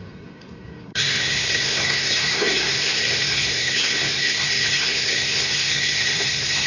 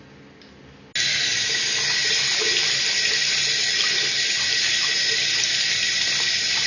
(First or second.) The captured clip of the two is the second